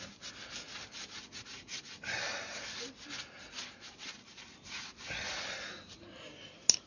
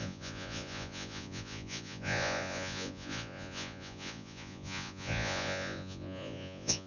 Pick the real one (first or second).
first